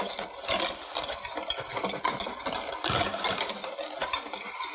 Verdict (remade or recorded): recorded